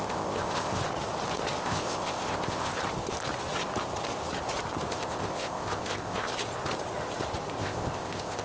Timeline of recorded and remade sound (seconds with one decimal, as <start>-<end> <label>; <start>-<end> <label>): 0.0-0.8 remade; 0.8-1.6 recorded; 1.6-2.7 remade; 2.7-4.9 recorded; 4.9-6.3 remade; 6.3-7.6 recorded; 7.6-8.4 remade